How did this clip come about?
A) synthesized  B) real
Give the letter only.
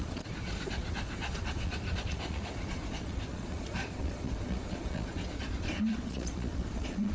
A